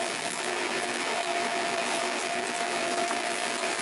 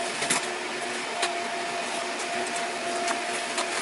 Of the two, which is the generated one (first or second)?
first